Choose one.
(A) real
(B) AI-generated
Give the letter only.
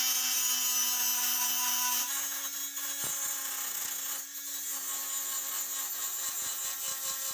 A